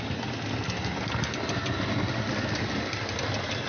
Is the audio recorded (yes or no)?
yes